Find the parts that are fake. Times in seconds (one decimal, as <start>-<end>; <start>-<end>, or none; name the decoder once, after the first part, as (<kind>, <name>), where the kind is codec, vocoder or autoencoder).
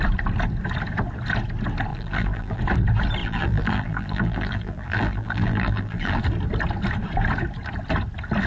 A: 1.9-2.6 (vocoder, BigVGAN v2); 3.2-6.2